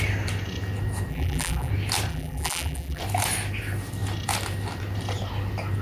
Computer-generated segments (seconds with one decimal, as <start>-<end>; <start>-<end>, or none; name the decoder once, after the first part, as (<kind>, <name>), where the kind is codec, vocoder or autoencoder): 1.1-1.7 (vocoder, BigVGAN v2); 2.1-3.0